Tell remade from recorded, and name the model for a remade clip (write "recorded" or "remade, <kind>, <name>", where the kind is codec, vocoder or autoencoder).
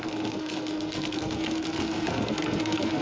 remade, codec, SNAC